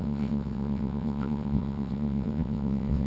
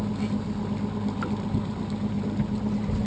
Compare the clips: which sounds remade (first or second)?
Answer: first